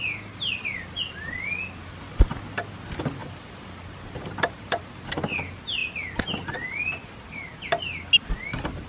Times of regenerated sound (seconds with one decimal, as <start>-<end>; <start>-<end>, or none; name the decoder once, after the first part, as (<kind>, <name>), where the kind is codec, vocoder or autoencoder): 1.8-2.6 (vocoder, BigVGAN v2); 3.2-4.8